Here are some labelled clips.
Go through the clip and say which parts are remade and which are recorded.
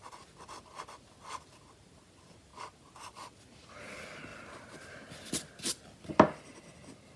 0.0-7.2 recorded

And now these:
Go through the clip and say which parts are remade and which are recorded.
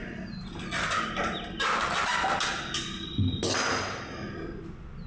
0.0-5.1 recorded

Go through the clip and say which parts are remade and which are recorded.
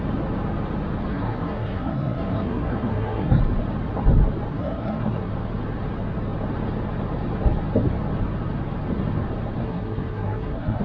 0.0-1.1 recorded; 1.1-3.4 remade; 3.4-4.5 recorded; 4.5-5.3 remade; 5.3-9.6 recorded; 9.6-10.8 remade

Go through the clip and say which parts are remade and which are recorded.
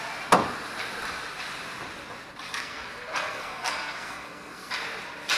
0.0-2.5 recorded; 2.5-4.7 remade; 4.7-5.4 recorded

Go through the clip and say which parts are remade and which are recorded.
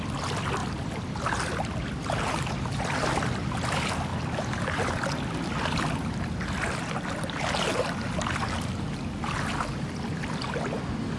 0.0-0.6 recorded; 0.6-2.9 remade; 2.9-4.1 recorded; 4.1-6.1 remade; 6.1-11.2 recorded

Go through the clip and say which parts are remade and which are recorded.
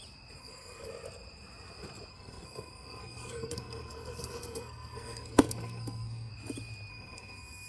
0.0-0.4 recorded; 0.4-0.9 remade; 0.9-2.1 recorded; 2.1-6.3 remade; 6.3-6.9 recorded; 6.9-7.7 remade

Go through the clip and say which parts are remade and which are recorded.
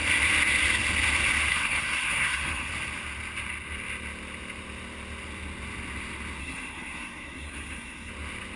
0.0-1.5 recorded; 1.5-2.7 remade; 2.7-6.4 recorded; 6.4-8.1 remade; 8.1-8.6 recorded